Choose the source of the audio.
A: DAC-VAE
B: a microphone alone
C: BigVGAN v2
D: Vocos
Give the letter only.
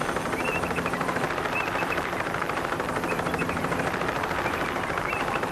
C